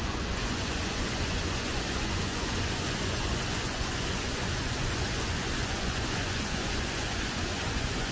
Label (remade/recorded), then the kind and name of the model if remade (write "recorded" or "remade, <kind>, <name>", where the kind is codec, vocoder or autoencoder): remade, vocoder, Vocos